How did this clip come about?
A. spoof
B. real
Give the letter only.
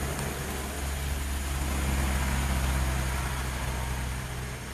B